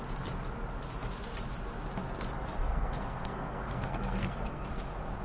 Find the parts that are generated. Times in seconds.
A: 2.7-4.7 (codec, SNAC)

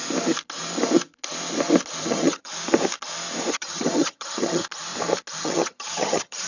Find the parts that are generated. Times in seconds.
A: 2.0-2.5 (vocoder, HiFi-GAN); 3.5-4.6; 5.4-6.5

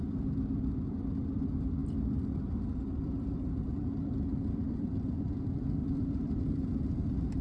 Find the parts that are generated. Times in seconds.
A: 1.8-5.3 (vocoder, BigVGAN v2); 5.8-6.8